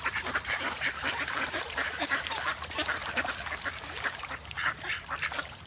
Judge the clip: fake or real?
fake